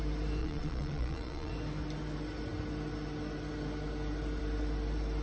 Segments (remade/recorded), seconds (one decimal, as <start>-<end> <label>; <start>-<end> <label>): 0.0-0.4 recorded; 0.4-1.5 remade; 1.5-5.2 recorded

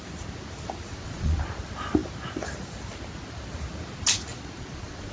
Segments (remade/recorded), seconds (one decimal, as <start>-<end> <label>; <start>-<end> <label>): 0.0-0.9 recorded; 0.9-1.4 remade; 1.4-4.3 recorded; 4.3-5.1 remade

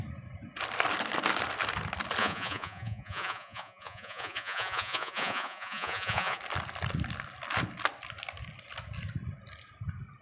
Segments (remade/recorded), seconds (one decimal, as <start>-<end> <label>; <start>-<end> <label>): 0.0-2.2 recorded; 2.2-6.4 remade; 6.4-10.2 recorded

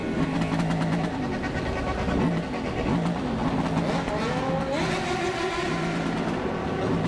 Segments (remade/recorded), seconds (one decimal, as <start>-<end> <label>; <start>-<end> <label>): 0.0-7.1 recorded

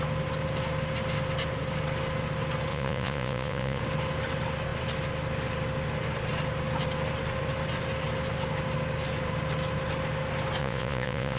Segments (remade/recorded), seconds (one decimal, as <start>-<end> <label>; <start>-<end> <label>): 0.0-2.7 recorded; 2.7-3.8 remade; 3.8-10.6 recorded; 10.6-11.4 remade